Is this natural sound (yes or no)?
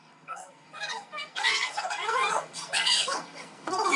no